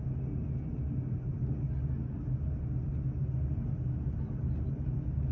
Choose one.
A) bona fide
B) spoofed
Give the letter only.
A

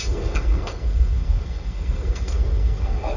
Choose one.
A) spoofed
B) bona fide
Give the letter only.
A